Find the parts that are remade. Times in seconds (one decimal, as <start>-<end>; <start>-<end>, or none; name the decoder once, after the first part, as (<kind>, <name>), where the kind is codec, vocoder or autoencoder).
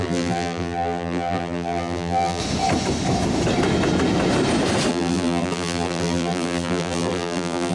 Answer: 0.0-2.4 (vocoder, BigVGAN v2); 4.9-7.7